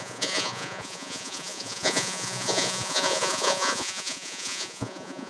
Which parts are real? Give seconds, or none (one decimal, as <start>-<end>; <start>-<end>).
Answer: none